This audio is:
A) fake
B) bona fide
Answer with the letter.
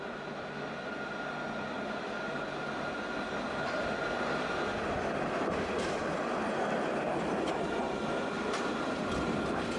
B